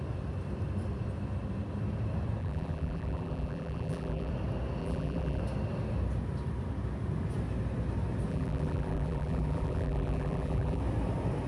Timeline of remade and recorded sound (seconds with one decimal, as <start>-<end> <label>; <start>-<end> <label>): 0.0-2.4 recorded; 2.4-4.3 remade; 4.3-4.8 recorded; 4.8-5.4 remade; 5.4-8.3 recorded; 8.3-10.8 remade; 10.8-11.5 recorded